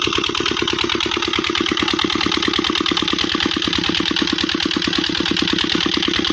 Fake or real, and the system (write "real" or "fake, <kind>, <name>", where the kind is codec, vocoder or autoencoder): real